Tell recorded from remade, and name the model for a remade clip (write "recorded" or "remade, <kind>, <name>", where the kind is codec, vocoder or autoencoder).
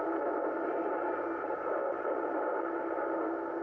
recorded